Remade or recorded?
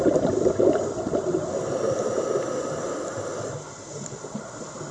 remade